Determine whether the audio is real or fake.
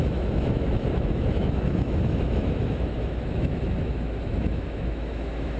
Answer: fake